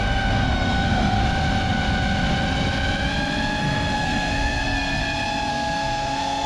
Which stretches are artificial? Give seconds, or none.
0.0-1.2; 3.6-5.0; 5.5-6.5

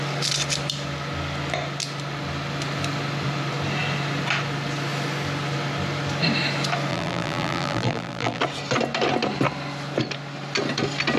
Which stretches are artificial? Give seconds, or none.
6.9-8.4

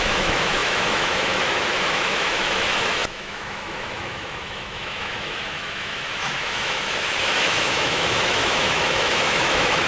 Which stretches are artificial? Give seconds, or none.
0.0-9.9

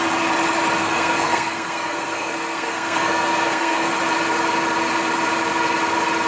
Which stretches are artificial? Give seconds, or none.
0.8-3.9

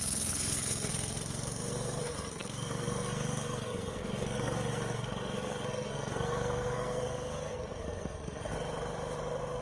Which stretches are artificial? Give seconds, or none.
0.0-8.5

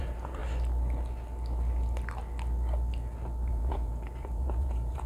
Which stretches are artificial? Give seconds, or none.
0.0-0.4; 3.5-5.1